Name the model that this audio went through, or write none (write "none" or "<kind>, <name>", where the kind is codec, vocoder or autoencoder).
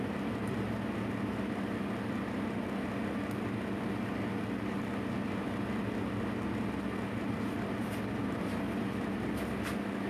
none